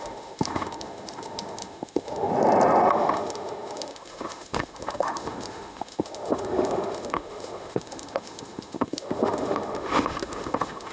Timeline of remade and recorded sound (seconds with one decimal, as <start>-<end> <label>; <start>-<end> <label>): 0.0-2.3 remade; 2.3-2.9 recorded; 2.9-10.9 remade